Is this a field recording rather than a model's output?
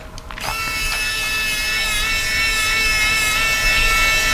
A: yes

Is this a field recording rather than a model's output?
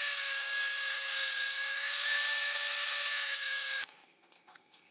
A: no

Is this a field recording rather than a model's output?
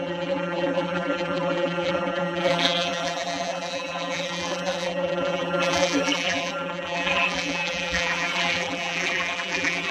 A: no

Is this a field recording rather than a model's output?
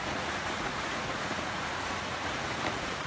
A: no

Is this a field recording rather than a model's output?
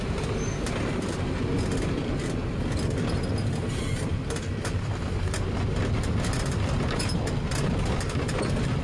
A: yes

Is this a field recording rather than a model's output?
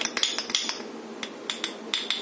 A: yes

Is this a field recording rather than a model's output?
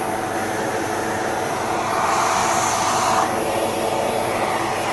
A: yes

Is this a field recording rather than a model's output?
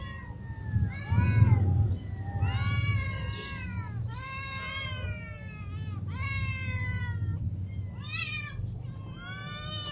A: yes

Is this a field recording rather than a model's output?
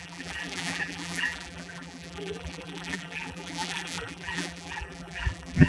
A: no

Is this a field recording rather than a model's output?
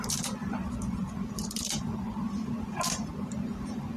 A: no